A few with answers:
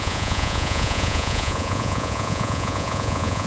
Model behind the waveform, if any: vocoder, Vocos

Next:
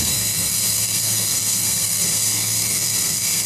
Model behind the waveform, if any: codec, SNAC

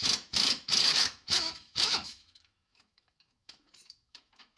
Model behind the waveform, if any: autoencoder, DAC-VAE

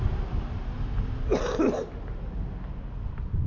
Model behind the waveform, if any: none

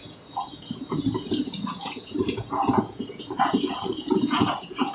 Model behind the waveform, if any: vocoder, Vocos